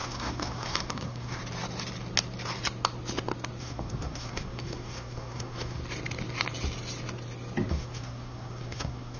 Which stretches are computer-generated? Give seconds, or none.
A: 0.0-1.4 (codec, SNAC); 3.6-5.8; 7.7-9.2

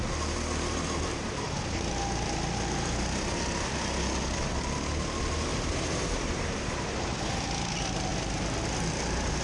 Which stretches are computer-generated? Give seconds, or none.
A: 5.5-6.6 (vocoder, BigVGAN v2)

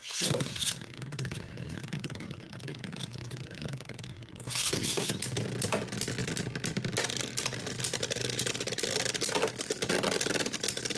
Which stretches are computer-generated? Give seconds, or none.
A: 0.0-5.2 (codec, SNAC)

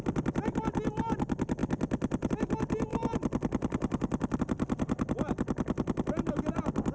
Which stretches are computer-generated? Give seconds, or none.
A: none

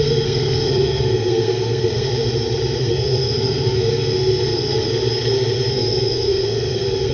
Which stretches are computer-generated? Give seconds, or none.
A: 0.0-2.1 (codec, SNAC); 2.8-4.9; 5.7-7.1

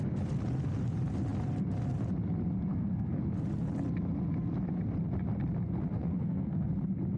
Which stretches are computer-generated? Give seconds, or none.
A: 2.7-3.2 (codec, SNAC); 6.0-6.7

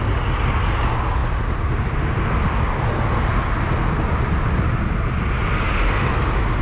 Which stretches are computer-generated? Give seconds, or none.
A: none